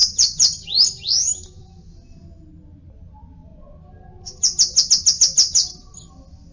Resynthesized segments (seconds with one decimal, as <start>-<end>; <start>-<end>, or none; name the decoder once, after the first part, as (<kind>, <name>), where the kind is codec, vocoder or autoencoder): 0.0-1.6 (vocoder, BigVGAN v2)